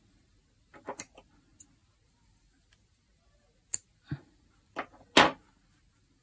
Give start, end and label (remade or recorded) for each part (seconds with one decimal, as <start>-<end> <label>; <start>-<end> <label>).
0.0-6.2 recorded